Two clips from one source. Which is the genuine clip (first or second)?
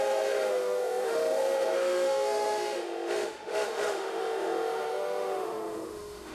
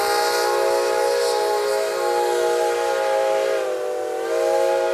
second